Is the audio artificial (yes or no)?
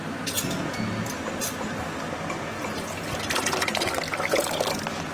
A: no